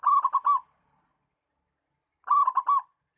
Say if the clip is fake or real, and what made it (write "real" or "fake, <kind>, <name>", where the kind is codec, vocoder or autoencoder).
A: real